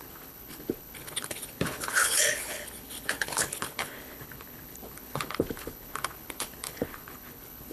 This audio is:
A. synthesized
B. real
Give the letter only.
A